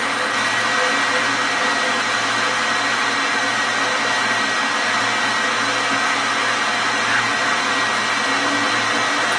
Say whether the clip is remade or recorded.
recorded